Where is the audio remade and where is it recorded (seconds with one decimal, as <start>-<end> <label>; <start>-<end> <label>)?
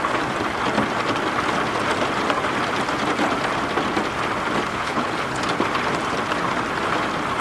0.0-4.7 recorded; 4.7-5.4 remade; 5.4-7.4 recorded